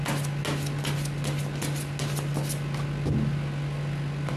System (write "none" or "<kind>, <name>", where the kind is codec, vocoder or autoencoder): none